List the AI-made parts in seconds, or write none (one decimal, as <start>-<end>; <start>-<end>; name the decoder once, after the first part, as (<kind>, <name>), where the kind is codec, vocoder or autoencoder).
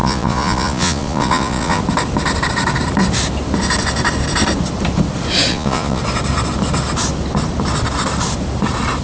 0.0-1.8 (vocoder, Vocos); 5.5-6.0